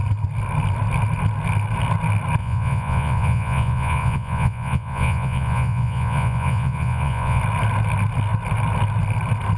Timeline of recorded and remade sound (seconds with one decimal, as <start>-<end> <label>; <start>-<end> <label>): 0.0-2.4 recorded; 2.4-7.4 remade; 7.4-9.6 recorded